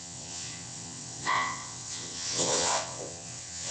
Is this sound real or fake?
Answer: fake